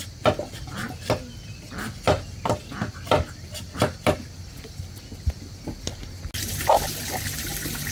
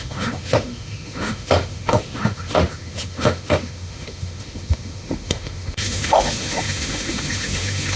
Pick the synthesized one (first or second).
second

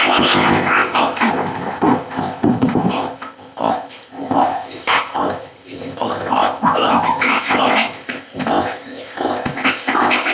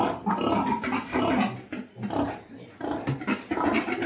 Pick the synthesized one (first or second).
first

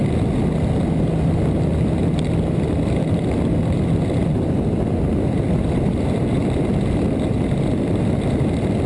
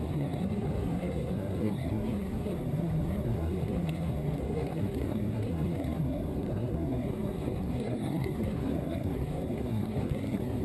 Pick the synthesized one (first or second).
second